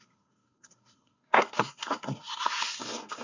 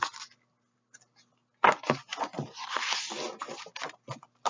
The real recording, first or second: second